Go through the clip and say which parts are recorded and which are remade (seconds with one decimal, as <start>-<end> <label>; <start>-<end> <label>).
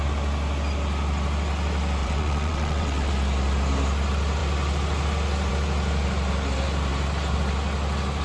0.0-2.0 recorded; 2.0-3.1 remade; 3.1-8.2 recorded